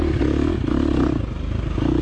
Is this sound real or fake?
real